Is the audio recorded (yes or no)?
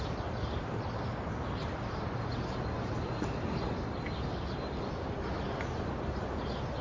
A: yes